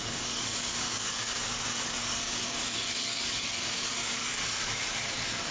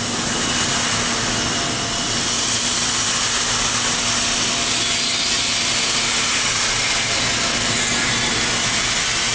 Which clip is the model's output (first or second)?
first